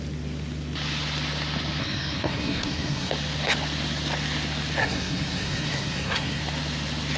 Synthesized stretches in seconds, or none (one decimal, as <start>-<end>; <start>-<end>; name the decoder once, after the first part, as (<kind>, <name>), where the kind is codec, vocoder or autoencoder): 1.8-3.1 (codec, SNAC); 4.8-6.4